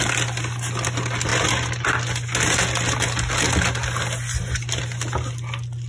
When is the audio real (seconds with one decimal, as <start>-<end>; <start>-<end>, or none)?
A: 0.0-5.9